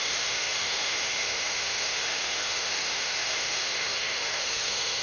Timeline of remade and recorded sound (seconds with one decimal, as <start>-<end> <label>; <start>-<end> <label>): 0.0-5.0 remade